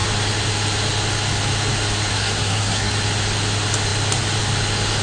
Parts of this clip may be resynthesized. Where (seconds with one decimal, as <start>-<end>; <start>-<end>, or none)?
2.1-2.9